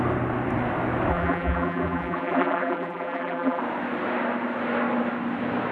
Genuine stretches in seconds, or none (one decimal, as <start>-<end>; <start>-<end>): 0.0-1.1; 3.6-5.7